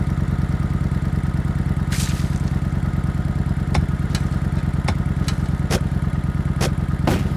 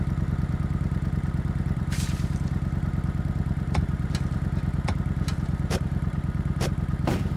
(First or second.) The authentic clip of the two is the first